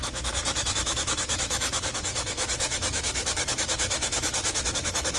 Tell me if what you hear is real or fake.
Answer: fake